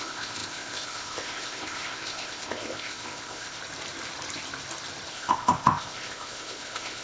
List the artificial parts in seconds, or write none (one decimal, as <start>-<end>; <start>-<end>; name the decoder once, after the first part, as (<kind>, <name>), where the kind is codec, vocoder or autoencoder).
0.0-3.6 (codec, ZipCodec); 5.1-7.0